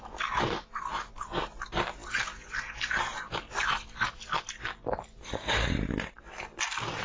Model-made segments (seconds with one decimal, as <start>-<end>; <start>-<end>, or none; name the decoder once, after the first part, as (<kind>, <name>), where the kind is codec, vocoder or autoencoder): none